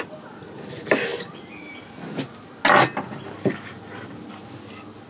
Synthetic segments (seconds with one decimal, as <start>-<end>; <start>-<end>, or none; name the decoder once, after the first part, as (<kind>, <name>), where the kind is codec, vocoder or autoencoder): none